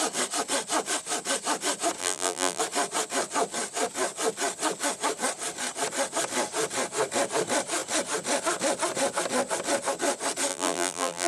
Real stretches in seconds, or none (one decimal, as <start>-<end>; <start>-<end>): 0.0-2.0; 2.6-10.5